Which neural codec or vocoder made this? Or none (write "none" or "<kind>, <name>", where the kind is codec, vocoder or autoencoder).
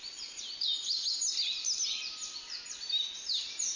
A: none